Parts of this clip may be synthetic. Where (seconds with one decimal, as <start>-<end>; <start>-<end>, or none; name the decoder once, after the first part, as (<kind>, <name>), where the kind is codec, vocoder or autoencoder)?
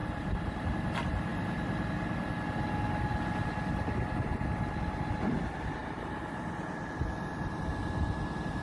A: 0.0-0.7 (vocoder, BigVGAN v2); 1.3-1.9; 5.8-8.6